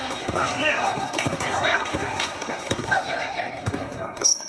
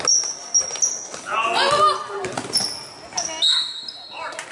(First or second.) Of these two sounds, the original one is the second